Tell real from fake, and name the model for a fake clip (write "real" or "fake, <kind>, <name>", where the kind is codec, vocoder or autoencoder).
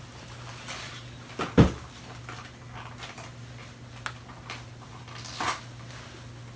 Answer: real